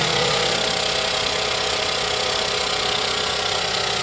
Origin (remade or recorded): remade